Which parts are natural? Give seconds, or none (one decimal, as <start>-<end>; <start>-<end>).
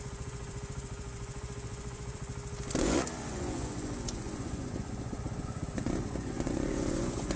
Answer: 2.3-2.8